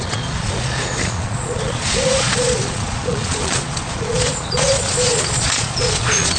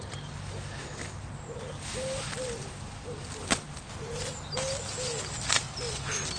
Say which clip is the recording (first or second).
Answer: second